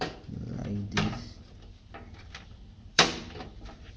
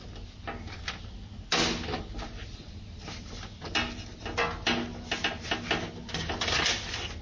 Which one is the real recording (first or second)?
second